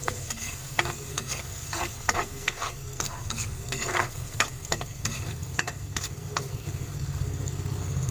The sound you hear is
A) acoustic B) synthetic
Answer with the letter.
B